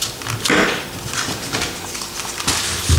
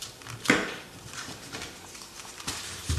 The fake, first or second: second